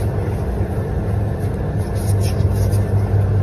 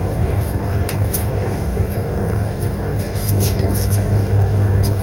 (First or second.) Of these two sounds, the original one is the first